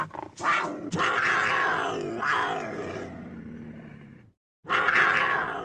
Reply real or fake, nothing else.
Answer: real